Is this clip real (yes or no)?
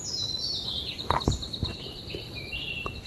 yes